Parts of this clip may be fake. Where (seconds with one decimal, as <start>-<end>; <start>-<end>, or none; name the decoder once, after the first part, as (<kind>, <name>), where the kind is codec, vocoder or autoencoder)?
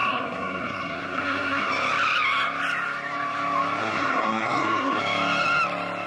0.0-1.7 (codec, SNAC); 3.8-5.0